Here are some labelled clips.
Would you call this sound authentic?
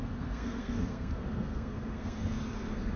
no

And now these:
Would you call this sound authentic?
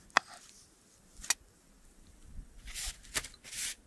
yes